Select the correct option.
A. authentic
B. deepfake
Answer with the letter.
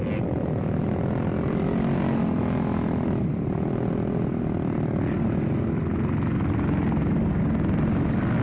A